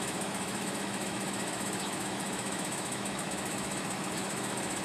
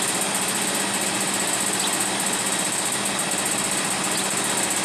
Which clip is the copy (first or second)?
first